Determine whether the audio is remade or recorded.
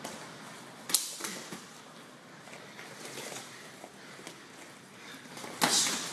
recorded